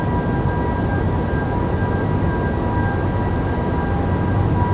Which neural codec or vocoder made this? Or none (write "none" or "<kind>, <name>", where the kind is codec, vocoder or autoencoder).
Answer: none